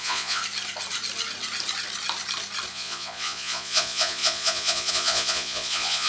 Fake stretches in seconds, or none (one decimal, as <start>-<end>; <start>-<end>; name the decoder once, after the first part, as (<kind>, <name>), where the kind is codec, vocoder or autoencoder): 0.0-0.4 (vocoder, Vocos); 2.7-6.1